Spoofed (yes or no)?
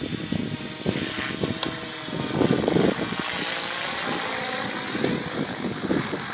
no